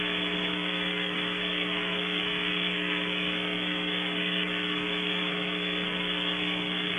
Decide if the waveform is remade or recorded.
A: remade